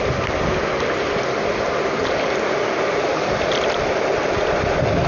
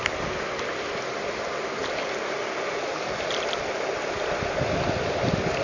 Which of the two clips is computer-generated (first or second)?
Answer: first